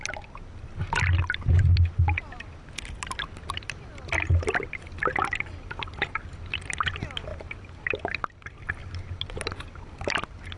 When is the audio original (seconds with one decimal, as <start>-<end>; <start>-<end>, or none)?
0.0-10.6